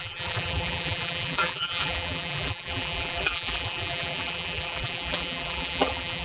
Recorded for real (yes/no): no